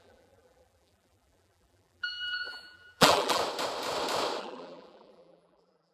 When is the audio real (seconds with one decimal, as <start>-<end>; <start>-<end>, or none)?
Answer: 3.4-4.4

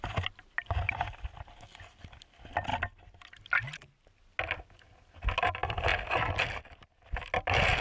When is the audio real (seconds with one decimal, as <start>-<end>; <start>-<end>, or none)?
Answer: 0.0-7.8

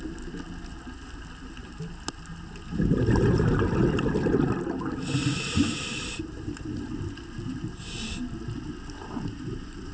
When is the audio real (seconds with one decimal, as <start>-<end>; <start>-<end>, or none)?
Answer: 0.0-5.2; 6.9-9.9

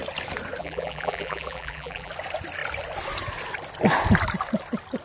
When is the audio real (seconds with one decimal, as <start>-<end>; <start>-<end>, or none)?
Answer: 0.0-0.6; 2.1-5.0